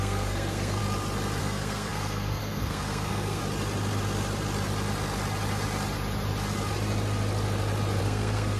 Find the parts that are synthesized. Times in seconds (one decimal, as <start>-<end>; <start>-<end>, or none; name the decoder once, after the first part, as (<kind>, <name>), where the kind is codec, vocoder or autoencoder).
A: 0.0-0.8 (codec, SNAC); 1.4-3.4; 8.0-8.6